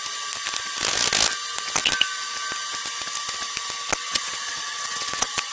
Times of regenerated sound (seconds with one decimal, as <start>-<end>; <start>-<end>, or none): 4.0-5.5